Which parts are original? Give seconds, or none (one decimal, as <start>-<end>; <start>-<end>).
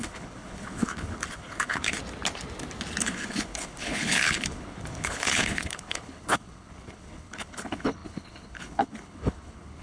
2.0-3.0